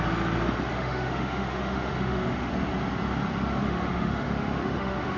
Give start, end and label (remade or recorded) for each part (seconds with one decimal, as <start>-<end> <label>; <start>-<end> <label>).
0.0-0.7 recorded; 0.7-2.5 remade; 2.5-3.6 recorded; 3.6-5.2 remade